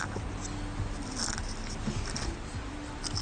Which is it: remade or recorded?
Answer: recorded